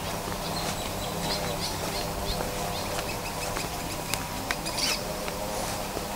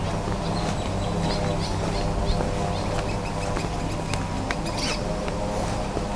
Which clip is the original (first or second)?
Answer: second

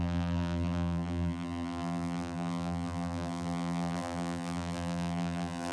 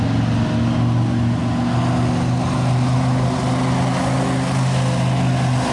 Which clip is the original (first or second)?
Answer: second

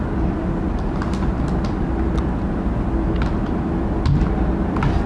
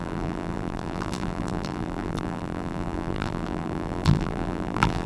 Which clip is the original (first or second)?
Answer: first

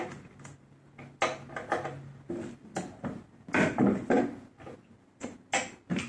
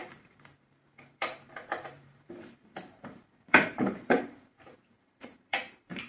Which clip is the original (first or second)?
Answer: first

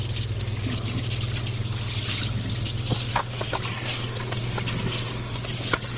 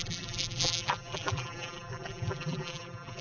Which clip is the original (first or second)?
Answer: first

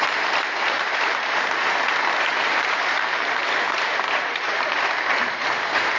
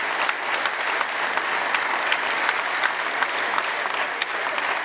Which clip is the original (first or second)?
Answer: second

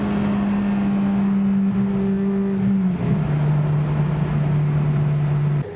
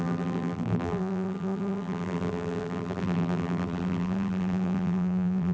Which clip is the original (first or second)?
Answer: first